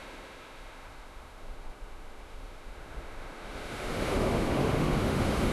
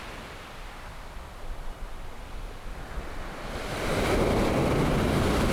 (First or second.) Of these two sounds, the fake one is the first